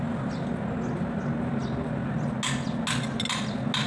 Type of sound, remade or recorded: recorded